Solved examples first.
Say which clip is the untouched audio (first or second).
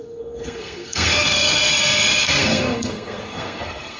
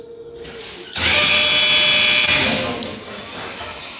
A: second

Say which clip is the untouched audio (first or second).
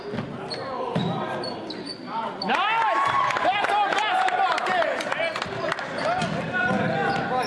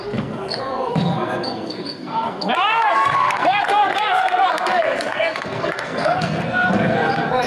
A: first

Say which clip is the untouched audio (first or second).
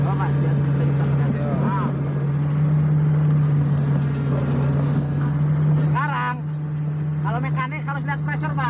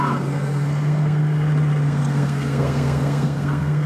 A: first